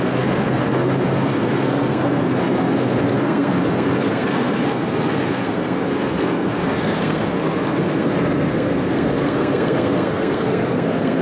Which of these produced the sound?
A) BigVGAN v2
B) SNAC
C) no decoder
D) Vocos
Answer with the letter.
B